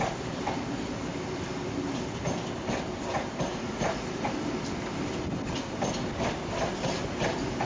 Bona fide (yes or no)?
yes